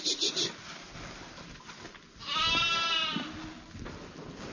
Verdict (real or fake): real